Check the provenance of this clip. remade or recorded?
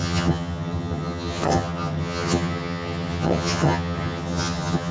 remade